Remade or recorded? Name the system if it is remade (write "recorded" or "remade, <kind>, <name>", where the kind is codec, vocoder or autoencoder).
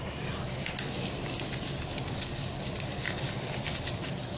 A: recorded